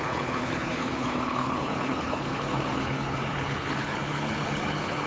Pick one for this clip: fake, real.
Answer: fake